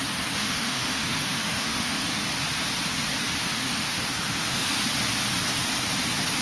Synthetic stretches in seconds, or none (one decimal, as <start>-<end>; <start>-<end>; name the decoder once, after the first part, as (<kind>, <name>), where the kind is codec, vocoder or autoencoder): 0.4-2.2 (autoencoder, DAC-VAE); 3.4-4.8